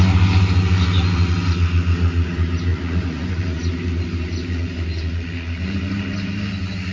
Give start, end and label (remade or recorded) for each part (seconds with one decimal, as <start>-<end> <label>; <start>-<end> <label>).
0.0-2.7 recorded; 2.7-3.4 remade; 3.4-6.9 recorded